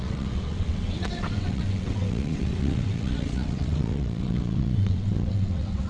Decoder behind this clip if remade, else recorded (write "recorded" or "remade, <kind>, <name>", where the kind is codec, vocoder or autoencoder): remade, vocoder, WaveNeXt